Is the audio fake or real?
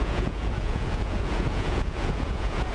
fake